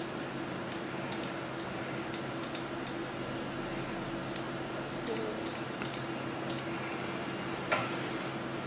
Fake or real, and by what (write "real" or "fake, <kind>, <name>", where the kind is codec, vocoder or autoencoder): real